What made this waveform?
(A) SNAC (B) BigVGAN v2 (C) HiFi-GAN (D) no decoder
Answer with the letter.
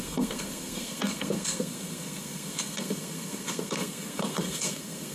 A